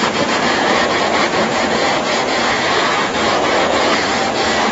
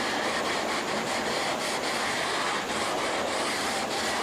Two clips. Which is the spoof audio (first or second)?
first